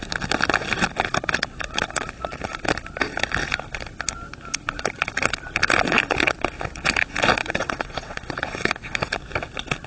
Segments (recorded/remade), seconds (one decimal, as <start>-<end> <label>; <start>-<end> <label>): 0.0-7.4 recorded; 7.4-8.9 remade; 8.9-9.9 recorded